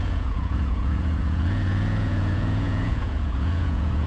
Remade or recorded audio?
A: remade